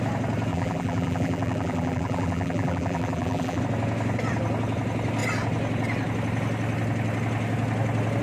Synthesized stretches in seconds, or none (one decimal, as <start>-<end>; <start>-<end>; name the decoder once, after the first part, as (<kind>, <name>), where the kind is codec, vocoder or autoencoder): 0.5-3.6 (vocoder, BigVGAN v2)